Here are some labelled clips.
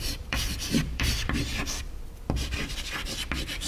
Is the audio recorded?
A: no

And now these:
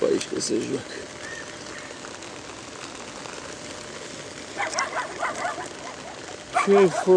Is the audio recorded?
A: yes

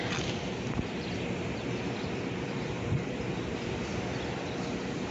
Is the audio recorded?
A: yes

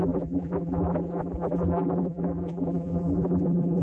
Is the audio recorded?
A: no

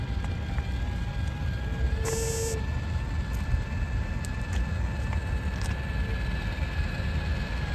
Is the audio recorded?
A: yes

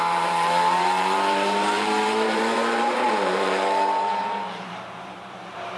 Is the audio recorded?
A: no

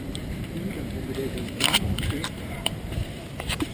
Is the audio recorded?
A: no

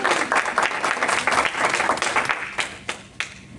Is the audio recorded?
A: yes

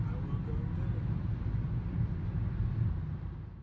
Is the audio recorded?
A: yes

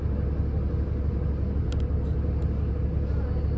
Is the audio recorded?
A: yes